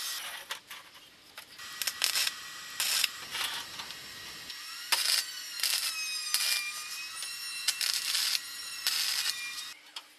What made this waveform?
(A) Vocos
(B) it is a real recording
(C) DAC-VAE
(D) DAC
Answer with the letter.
B